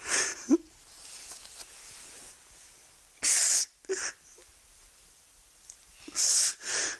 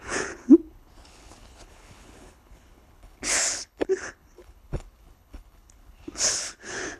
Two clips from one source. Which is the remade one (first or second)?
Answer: second